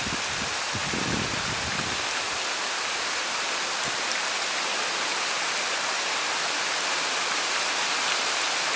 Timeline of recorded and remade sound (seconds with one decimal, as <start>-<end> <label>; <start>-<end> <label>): 0.0-8.8 recorded